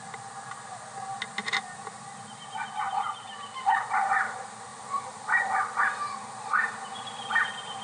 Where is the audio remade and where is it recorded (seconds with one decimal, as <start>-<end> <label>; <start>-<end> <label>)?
0.0-7.8 recorded